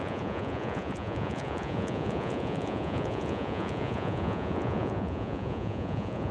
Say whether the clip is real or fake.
fake